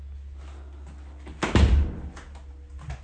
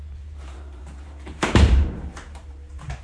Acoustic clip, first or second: first